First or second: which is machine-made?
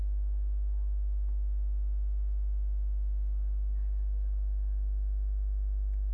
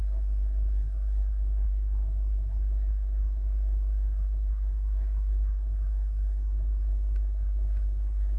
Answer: second